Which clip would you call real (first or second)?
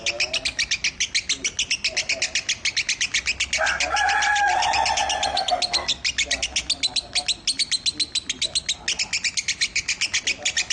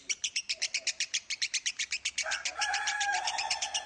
first